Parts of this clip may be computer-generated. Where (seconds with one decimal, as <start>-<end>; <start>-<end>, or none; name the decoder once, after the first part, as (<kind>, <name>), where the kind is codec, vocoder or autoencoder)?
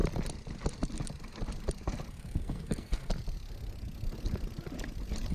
2.1-3.1 (codec, SNAC)